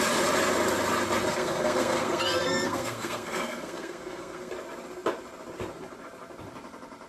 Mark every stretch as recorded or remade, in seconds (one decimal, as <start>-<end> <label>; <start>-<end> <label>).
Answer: 0.0-1.3 recorded; 1.3-4.5 remade; 4.5-7.1 recorded